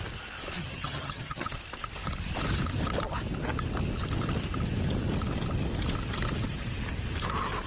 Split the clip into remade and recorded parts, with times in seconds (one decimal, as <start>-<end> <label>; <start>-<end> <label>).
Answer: 0.0-0.6 recorded; 0.6-1.5 remade; 1.5-7.7 recorded